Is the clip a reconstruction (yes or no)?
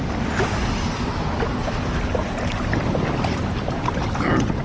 no